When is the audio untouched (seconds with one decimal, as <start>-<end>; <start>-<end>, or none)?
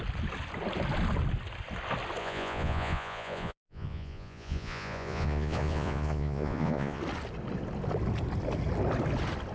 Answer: 0.0-2.2; 7.0-9.5